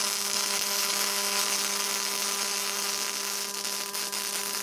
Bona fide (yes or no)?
yes